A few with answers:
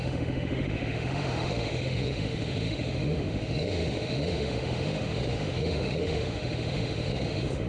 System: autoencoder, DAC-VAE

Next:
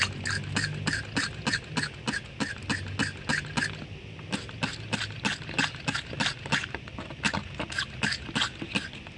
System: none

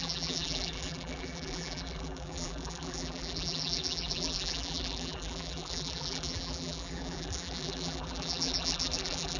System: vocoder, BigVGAN v2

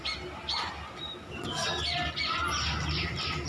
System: none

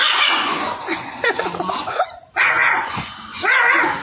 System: vocoder, Vocos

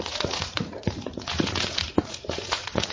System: vocoder, Vocos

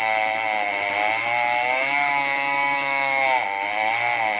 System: autoencoder, DAC-VAE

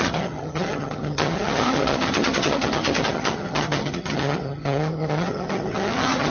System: vocoder, HiFi-GAN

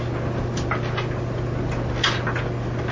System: none